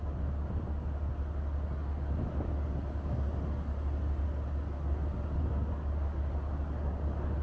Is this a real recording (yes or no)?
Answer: yes